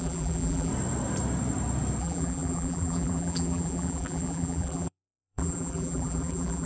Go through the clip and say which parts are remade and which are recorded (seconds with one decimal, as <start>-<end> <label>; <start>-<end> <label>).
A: 0.0-0.7 remade; 0.7-2.0 recorded; 2.0-6.7 remade